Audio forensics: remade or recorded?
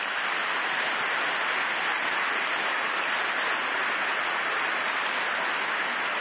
recorded